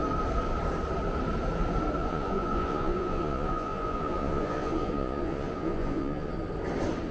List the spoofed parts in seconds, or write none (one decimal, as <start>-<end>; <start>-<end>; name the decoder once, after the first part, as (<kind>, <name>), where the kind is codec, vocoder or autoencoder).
2.0-6.3 (vocoder, Vocos)